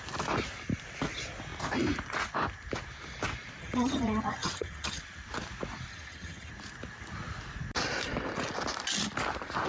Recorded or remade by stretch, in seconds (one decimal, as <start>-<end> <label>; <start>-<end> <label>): 0.0-3.6 recorded; 3.6-5.0 remade; 5.0-5.9 recorded; 5.9-6.5 remade; 6.5-9.7 recorded